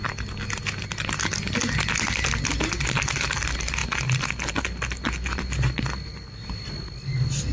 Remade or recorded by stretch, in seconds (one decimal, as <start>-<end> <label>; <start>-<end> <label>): 0.0-7.5 recorded